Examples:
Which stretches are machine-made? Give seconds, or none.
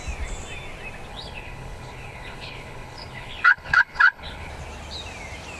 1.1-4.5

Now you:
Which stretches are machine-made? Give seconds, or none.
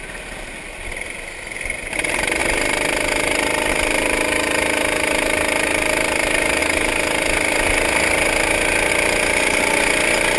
none